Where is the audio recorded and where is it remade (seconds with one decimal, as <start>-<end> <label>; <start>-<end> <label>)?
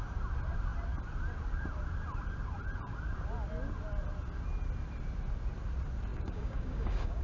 0.0-6.1 recorded; 6.1-7.2 remade